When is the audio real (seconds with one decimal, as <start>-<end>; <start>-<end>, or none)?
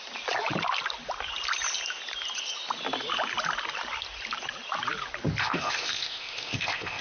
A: 0.0-5.4